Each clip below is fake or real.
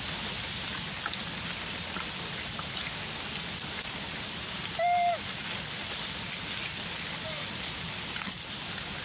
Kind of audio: real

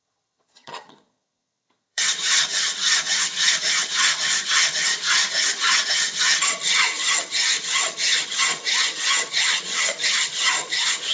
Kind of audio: fake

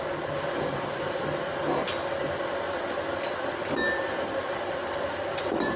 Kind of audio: real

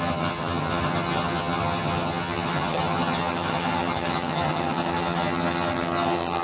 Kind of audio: fake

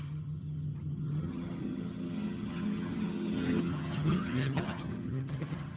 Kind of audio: fake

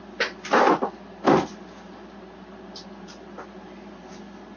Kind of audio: real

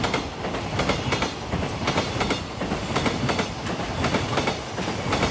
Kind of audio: real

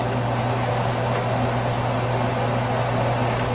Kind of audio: real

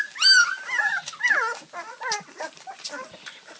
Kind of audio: real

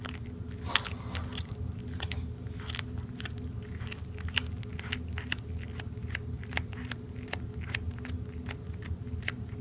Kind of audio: real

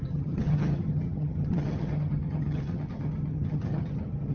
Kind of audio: fake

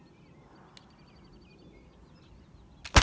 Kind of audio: real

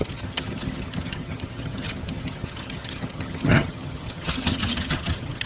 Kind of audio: fake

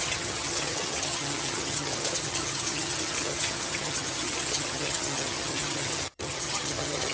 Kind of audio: fake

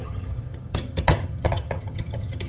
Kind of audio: fake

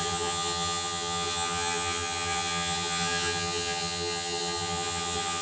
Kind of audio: fake